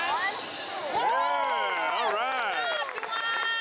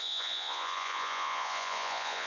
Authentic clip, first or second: first